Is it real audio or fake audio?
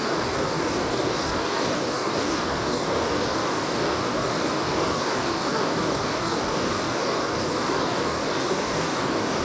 fake